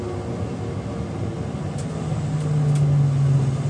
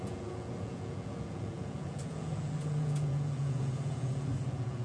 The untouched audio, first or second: first